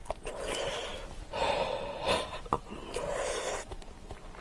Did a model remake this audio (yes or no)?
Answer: no